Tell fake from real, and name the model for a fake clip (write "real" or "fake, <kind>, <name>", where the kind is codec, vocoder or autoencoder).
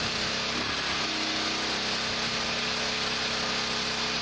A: real